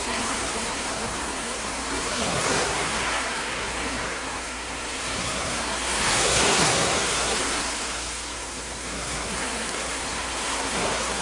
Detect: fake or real fake